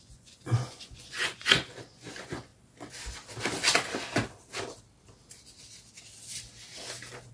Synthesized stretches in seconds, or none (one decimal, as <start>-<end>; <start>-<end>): 0.0-2.5

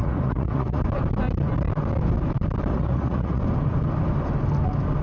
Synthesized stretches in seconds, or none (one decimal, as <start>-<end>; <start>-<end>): 0.0-0.8; 2.7-3.4

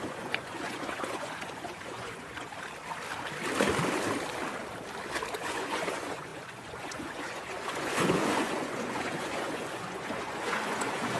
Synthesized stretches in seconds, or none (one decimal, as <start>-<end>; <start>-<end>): 0.0-2.5; 5.3-11.2

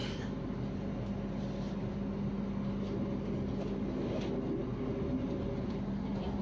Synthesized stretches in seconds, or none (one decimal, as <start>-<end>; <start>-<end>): none

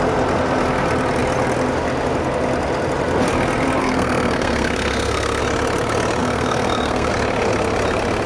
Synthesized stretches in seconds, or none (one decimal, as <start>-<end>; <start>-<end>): 3.8-5.4; 6.2-7.1

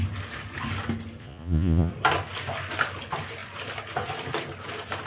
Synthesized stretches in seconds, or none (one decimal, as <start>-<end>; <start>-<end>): 1.2-1.9

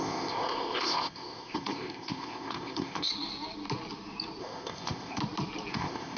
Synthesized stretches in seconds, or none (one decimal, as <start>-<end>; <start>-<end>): 0.0-3.1; 4.4-5.2; 5.7-6.2